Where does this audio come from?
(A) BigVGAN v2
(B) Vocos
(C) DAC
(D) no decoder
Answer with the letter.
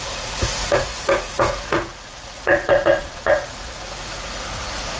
B